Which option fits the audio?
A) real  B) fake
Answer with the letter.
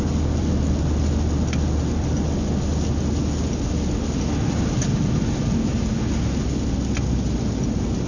A